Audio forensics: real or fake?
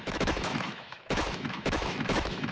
fake